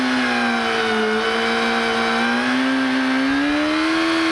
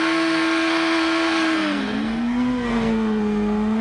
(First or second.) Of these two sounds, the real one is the first